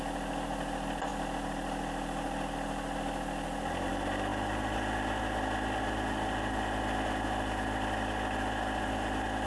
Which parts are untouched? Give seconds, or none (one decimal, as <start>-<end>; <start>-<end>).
0.0-9.5